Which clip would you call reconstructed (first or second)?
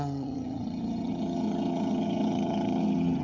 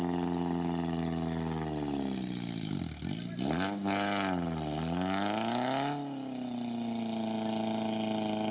first